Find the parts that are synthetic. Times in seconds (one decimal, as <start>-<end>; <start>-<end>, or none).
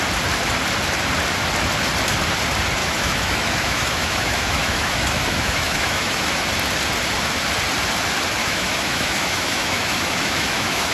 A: 2.8-6.3; 8.4-10.9